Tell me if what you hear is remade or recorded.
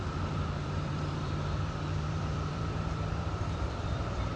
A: remade